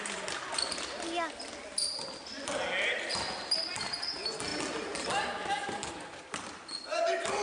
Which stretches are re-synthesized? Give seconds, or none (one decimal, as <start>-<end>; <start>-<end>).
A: none